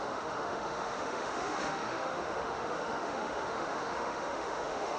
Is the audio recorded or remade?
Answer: remade